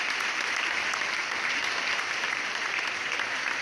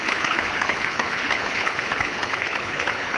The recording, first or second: first